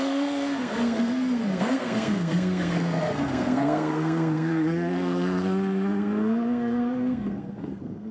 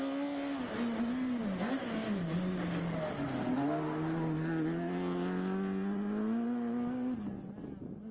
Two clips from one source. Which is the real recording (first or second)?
second